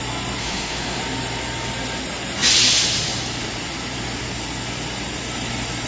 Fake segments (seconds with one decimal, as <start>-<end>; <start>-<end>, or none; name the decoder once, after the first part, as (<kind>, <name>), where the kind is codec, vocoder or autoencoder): 0.4-1.0 (autoencoder, DAC-VAE)